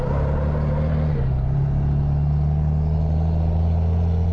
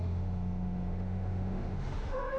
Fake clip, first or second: second